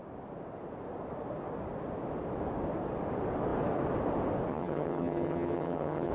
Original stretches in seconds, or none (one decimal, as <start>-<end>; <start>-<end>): 0.0-4.5

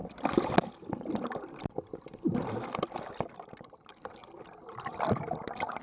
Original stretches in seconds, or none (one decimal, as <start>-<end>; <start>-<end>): 0.0-5.8